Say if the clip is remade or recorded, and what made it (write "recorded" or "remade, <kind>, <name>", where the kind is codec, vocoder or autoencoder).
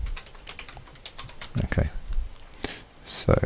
recorded